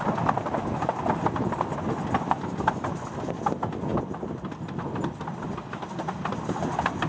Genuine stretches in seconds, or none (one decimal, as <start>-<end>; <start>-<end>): 0.0-7.1